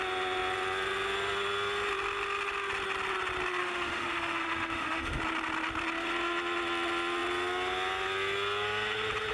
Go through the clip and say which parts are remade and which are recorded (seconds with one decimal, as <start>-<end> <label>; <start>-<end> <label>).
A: 0.0-3.6 recorded; 3.6-5.2 remade; 5.2-9.3 recorded